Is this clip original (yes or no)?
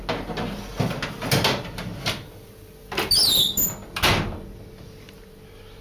yes